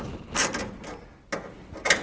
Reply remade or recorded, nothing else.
recorded